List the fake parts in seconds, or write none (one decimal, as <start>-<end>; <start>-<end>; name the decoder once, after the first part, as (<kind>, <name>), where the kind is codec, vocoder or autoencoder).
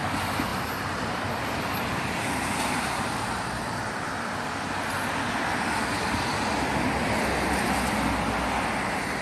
0.5-4.1 (vocoder, BigVGAN v2)